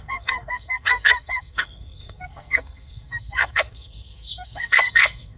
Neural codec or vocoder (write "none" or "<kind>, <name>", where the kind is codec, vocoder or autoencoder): codec, SNAC